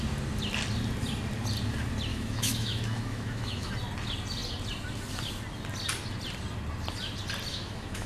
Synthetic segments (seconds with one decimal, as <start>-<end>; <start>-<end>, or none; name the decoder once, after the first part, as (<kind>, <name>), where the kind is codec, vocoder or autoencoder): 2.1-3.7 (autoencoder, DAC-VAE); 7.5-8.1